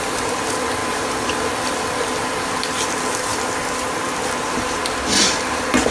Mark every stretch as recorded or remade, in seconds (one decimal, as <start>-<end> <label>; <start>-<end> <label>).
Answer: 0.0-0.8 recorded; 0.8-1.5 remade; 1.5-3.3 recorded; 3.3-4.1 remade; 4.1-5.9 recorded